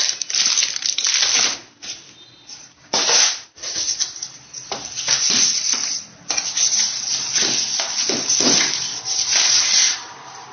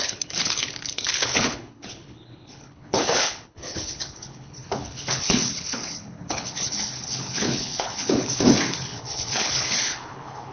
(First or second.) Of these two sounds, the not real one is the second